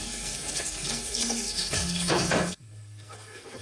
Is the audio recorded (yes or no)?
no